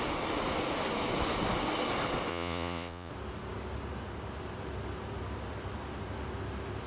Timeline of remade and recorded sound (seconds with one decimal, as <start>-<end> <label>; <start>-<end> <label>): 0.0-2.3 recorded; 2.3-3.1 remade; 3.1-6.9 recorded